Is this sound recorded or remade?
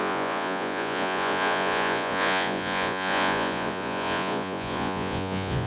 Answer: remade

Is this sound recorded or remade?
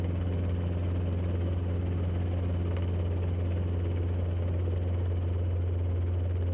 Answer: recorded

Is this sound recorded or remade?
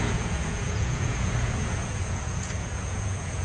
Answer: remade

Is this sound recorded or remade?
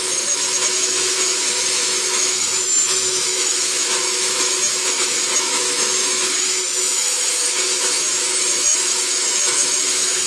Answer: remade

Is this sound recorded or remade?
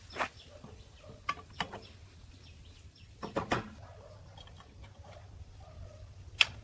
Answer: recorded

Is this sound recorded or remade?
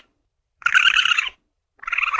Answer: remade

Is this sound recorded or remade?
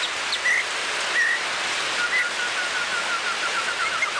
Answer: recorded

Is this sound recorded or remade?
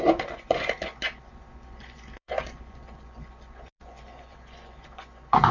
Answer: remade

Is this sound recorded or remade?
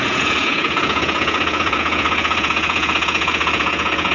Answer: remade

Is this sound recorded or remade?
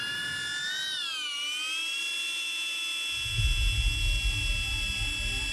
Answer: recorded